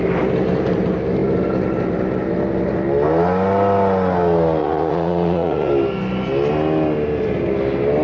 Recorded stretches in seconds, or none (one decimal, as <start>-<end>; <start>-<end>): 0.0-4.6; 5.7-8.0